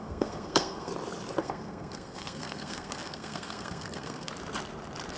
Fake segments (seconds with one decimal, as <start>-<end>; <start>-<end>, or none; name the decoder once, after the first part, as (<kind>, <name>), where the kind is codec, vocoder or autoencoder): 0.0-0.9 (codec, SNAC); 1.4-4.3